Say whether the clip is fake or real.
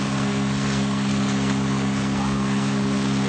fake